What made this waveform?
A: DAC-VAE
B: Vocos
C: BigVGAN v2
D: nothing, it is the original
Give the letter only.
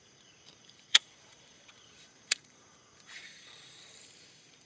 C